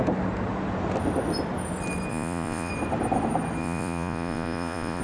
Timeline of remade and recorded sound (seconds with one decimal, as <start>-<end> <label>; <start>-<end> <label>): 0.0-2.1 recorded; 2.1-2.7 remade; 2.7-3.6 recorded; 3.6-5.0 remade